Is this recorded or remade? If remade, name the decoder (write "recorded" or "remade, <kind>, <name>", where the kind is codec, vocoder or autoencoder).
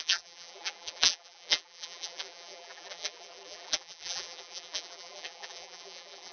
remade, vocoder, BigVGAN v2